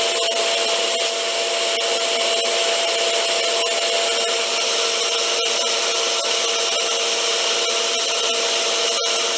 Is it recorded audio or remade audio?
recorded